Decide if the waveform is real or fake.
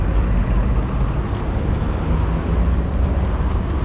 real